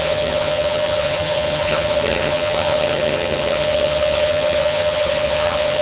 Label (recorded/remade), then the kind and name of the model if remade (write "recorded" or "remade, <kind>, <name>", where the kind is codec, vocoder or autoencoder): remade, vocoder, HiFi-GAN